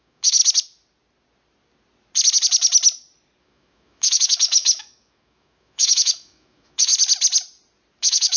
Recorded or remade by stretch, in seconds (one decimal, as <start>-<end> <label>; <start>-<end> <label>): 0.0-0.4 remade; 0.4-3.4 recorded; 3.4-6.9 remade; 6.9-8.0 recorded; 8.0-8.4 remade